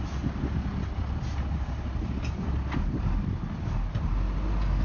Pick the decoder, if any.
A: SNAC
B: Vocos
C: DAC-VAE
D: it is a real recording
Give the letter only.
D